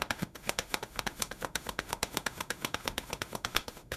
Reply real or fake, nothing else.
fake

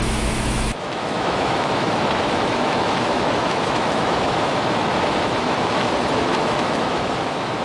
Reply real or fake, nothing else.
fake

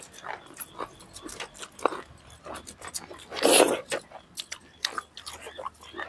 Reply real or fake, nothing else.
real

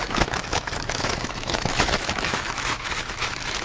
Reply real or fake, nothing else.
fake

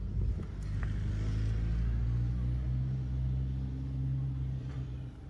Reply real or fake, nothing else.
real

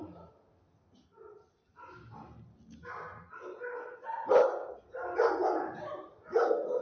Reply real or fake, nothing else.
real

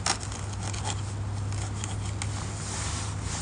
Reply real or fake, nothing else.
real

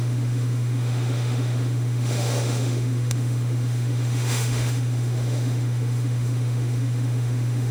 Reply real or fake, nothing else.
fake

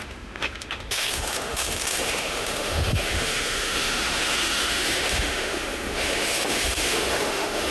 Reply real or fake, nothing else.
fake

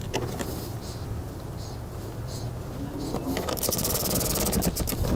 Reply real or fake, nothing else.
real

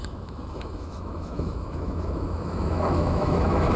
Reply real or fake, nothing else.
fake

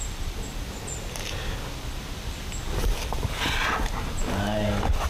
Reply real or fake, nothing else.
real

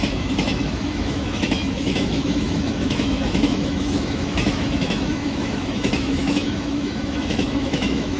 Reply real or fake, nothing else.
fake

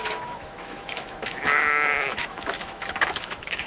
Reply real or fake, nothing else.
fake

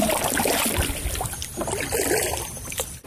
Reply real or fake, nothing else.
real